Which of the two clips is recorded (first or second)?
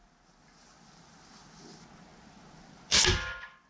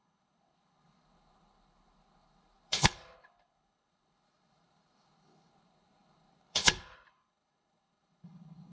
first